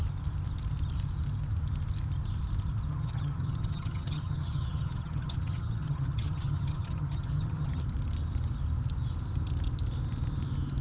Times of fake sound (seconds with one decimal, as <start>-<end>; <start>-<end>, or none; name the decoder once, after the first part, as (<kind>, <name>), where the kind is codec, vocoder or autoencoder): 2.9-7.8 (vocoder, HiFi-GAN)